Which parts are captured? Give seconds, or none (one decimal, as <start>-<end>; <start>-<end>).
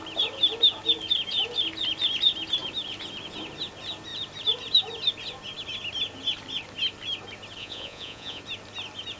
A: 0.0-7.6; 8.4-9.2